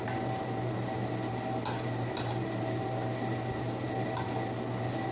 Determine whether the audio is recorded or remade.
recorded